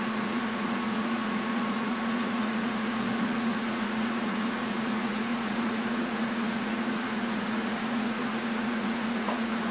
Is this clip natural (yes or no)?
no